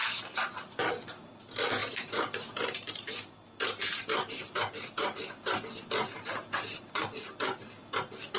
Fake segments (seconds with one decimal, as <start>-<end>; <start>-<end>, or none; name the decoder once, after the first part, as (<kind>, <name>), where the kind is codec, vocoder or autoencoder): 0.0-0.9 (vocoder, BigVGAN v2)